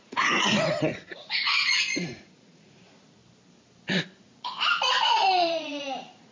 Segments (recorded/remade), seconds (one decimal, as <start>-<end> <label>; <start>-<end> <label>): 0.0-3.2 remade; 3.2-4.2 recorded; 4.2-6.3 remade